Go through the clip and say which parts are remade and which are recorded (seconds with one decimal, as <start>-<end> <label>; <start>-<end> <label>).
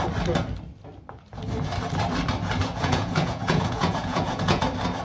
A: 0.0-2.6 recorded; 2.6-4.6 remade; 4.6-5.0 recorded